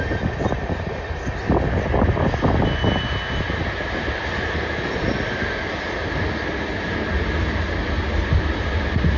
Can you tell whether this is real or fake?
real